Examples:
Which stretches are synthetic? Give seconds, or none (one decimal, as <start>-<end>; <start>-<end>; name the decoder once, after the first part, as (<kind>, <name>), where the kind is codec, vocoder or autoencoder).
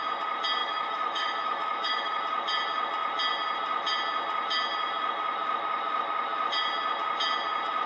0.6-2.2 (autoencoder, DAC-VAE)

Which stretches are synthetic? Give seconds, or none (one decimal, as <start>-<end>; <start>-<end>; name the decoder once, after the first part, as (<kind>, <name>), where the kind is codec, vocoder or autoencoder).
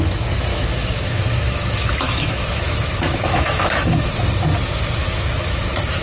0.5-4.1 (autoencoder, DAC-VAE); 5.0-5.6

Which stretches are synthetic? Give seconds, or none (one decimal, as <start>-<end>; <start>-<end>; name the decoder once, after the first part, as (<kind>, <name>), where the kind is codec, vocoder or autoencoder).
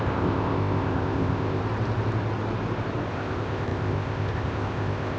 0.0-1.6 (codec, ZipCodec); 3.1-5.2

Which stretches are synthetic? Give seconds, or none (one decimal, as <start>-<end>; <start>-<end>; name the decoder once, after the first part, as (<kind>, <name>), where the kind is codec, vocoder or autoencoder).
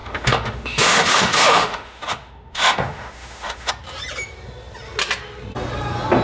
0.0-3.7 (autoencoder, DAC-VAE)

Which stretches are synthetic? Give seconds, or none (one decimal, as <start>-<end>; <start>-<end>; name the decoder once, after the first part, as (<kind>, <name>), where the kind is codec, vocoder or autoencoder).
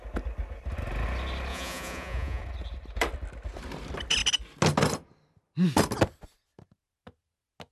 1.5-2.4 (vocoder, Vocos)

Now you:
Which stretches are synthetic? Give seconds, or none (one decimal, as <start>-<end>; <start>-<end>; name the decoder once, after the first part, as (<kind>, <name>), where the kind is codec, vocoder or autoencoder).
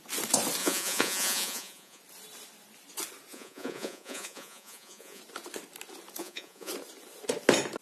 0.6-2.0 (vocoder, Vocos); 3.3-5.2; 6.2-6.7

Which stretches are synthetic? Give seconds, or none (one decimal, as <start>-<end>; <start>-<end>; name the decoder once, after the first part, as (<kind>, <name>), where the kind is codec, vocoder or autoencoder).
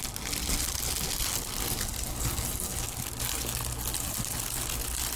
none